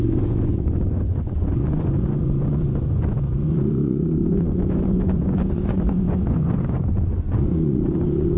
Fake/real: fake